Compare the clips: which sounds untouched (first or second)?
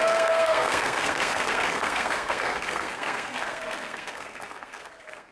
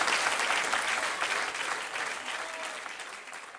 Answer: second